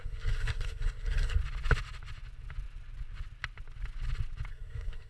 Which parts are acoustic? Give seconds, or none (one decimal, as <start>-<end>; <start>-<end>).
1.4-4.5